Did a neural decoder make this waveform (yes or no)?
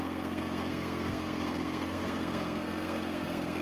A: yes